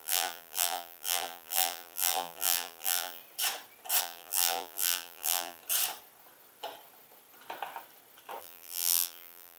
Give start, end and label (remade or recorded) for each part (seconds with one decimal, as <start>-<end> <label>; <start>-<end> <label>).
0.0-3.2 remade; 3.2-4.0 recorded; 4.0-5.6 remade; 5.6-8.4 recorded; 8.4-9.6 remade